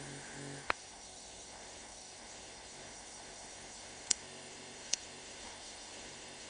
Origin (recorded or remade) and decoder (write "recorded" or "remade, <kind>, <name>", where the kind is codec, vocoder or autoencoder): remade, codec, SNAC